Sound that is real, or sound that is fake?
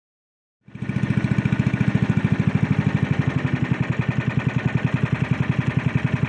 real